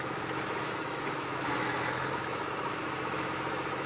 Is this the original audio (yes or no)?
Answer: no